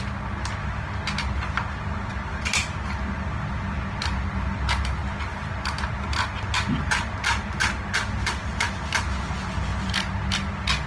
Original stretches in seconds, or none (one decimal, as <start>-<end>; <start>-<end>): 0.0-10.9